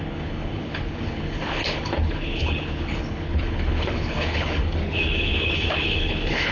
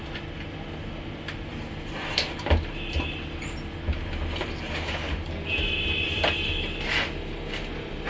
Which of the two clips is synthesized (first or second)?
first